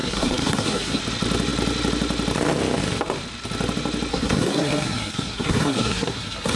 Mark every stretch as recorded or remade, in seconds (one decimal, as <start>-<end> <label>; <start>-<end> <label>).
0.0-1.0 remade; 1.0-4.1 recorded; 4.1-6.6 remade